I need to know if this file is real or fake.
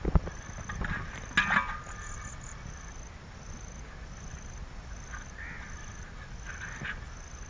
real